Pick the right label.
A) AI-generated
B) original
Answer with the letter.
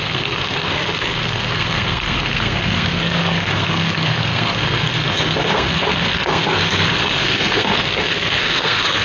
A